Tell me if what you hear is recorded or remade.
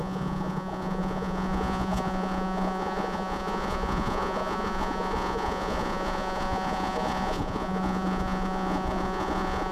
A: remade